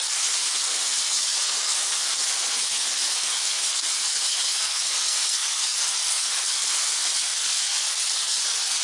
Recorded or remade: remade